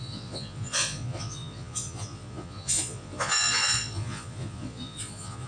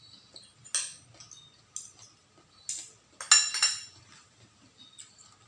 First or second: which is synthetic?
first